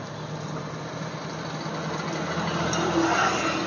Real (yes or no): yes